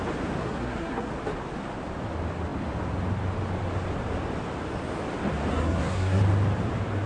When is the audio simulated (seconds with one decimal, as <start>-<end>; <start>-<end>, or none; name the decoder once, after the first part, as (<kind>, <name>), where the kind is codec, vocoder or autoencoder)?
0.4-1.1 (codec, SNAC); 5.5-6.2